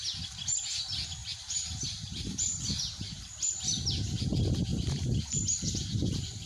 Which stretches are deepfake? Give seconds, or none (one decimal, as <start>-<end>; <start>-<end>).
1.2-3.3; 4.7-5.4